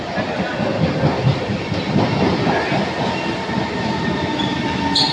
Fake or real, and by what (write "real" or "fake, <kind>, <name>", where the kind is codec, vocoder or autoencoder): real